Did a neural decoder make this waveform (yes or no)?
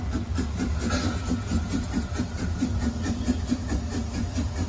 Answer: no